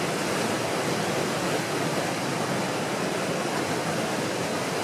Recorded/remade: recorded